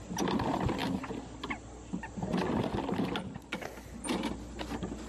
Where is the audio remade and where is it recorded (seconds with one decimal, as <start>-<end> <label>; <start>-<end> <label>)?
0.0-5.1 recorded